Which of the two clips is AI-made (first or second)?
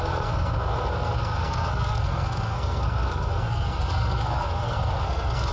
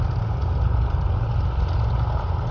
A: first